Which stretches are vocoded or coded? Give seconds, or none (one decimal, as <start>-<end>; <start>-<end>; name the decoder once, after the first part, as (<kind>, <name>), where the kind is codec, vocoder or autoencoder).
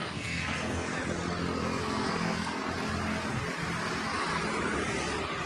0.0-0.9 (codec, SNAC); 1.6-2.6